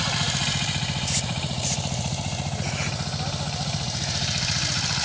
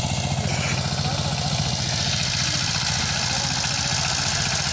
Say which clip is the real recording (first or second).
second